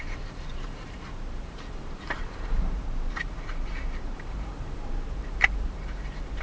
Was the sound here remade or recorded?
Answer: remade